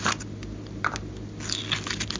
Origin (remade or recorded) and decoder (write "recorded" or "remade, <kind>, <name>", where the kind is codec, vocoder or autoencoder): recorded